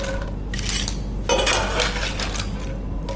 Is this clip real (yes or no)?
yes